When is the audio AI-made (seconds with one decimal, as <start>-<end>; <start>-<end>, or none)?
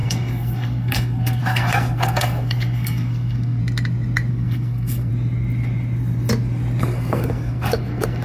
0.0-3.6; 4.3-5.1; 6.8-8.2